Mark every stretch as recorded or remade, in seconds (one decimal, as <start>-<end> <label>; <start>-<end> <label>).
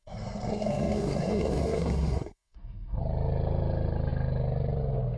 0.0-3.0 remade; 3.0-5.2 recorded